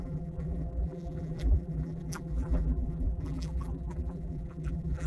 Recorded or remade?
remade